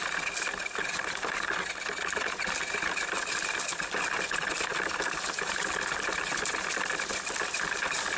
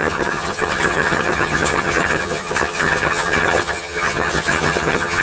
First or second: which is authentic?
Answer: first